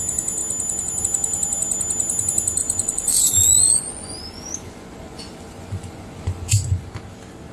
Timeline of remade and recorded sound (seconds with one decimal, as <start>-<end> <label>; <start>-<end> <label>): 0.0-2.6 recorded; 2.6-6.9 remade; 6.9-7.5 recorded